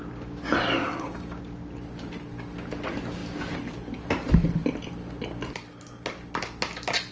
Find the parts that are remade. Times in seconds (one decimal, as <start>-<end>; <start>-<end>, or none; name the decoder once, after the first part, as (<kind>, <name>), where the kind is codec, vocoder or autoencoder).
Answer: 0.8-1.4 (codec, DAC)